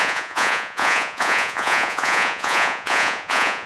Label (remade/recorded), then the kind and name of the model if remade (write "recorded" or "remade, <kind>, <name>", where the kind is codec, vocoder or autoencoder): remade, vocoder, Vocos